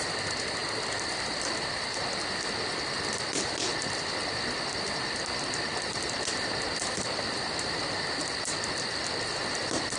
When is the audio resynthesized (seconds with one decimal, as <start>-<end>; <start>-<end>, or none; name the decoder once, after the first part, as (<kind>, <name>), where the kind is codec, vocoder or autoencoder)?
none